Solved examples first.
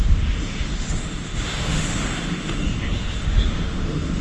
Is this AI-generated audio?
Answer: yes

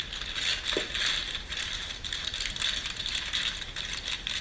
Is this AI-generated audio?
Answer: no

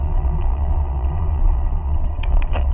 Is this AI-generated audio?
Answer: yes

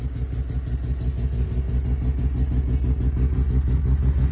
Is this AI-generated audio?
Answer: no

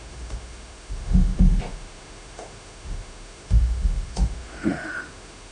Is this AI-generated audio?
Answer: yes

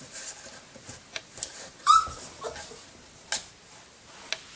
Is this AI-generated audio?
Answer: no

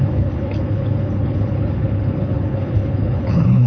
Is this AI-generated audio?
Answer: yes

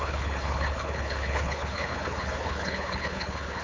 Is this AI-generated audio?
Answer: yes